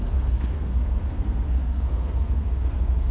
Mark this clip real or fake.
fake